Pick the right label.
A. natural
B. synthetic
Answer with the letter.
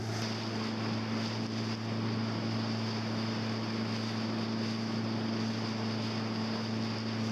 A